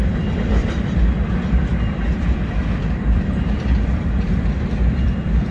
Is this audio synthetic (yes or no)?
yes